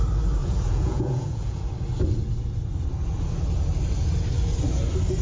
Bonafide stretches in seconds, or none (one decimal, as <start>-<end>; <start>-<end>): 0.0-0.4; 1.6-5.2